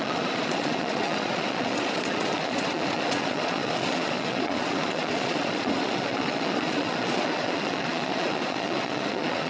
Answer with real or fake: fake